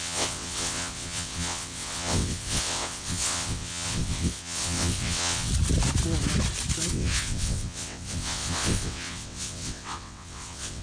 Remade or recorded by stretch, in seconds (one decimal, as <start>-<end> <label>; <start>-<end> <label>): 0.0-5.5 remade; 5.5-6.9 recorded; 6.9-10.8 remade